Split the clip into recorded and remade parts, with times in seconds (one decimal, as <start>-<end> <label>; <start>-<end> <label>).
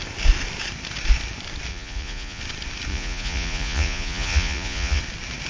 0.0-1.7 recorded; 1.7-2.4 remade; 2.4-2.9 recorded; 2.9-5.0 remade; 5.0-5.5 recorded